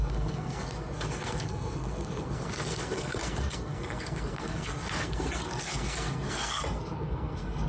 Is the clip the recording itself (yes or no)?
no